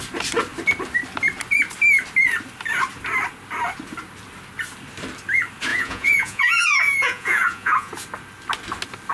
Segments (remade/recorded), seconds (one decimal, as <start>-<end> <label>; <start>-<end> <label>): 0.0-5.7 recorded; 5.7-7.9 remade; 7.9-9.1 recorded